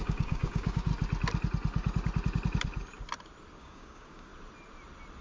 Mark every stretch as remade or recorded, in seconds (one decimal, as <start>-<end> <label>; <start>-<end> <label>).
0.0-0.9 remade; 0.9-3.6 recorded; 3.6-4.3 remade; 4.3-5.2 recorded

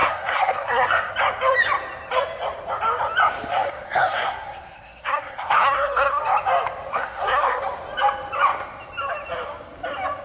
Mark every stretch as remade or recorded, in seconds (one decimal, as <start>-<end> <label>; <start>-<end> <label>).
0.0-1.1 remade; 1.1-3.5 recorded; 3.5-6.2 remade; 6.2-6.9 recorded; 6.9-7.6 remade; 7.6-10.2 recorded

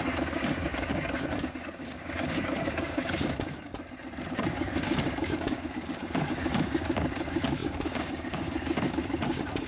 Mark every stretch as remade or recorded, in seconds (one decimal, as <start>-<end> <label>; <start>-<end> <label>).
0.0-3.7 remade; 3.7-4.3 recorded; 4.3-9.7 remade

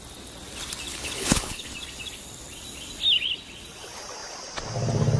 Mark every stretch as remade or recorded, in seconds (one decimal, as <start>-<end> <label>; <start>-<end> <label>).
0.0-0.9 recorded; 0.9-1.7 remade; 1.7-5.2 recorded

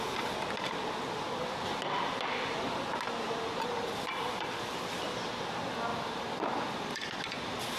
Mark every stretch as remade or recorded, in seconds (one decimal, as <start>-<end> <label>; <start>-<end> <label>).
0.0-3.5 recorded; 3.5-4.2 remade; 4.2-5.9 recorded; 5.9-7.2 remade; 7.2-7.8 recorded

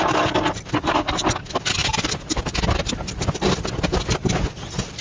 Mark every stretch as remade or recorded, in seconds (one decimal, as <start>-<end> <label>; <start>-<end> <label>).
0.0-5.0 recorded

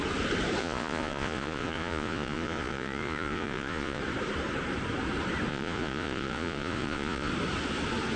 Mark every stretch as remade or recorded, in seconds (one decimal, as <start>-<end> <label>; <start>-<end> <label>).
0.0-0.6 recorded; 0.6-4.0 remade; 4.0-5.5 recorded; 5.5-7.3 remade; 7.3-8.2 recorded

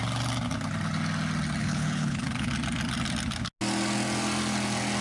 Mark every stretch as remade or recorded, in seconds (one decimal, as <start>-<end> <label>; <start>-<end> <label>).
0.0-1.6 recorded; 1.6-2.5 remade; 2.5-5.0 recorded